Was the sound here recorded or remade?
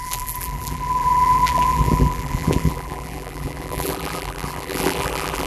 remade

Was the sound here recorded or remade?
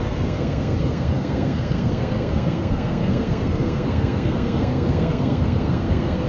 remade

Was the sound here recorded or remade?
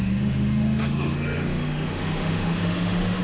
remade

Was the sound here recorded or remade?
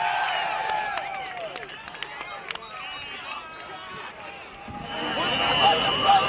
recorded